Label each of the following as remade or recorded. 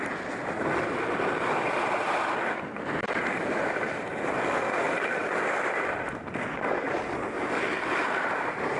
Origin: recorded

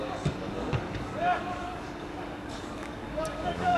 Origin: remade